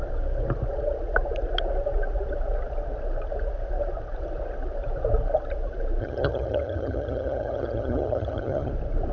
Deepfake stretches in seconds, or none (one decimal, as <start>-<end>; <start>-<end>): 6.0-8.7